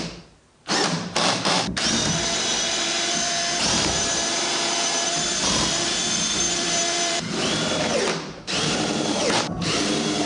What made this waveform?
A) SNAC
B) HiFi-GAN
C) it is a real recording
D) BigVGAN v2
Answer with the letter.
D